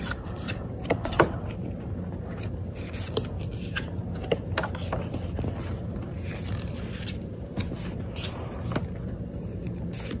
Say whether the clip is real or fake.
real